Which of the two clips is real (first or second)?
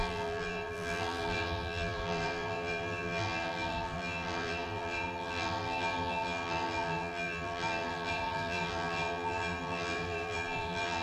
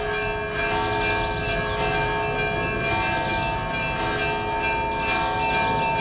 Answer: second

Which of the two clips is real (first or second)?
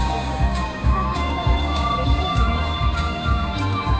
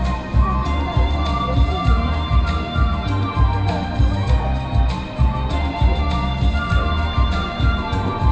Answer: second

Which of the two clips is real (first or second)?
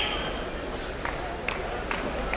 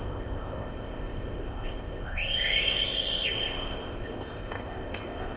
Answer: first